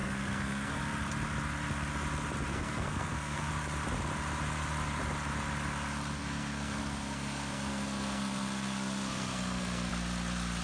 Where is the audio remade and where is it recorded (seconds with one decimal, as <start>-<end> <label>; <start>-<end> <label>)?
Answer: 0.0-0.8 remade; 0.8-2.5 recorded; 2.5-3.5 remade; 3.5-6.2 recorded; 6.2-9.9 remade; 9.9-10.6 recorded